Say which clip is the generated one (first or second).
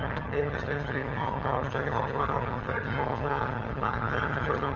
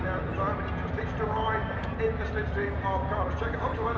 first